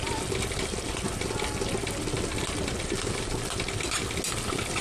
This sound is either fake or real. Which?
real